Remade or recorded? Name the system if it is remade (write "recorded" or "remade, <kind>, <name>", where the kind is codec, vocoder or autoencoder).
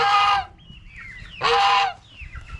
recorded